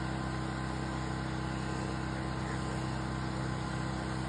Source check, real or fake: real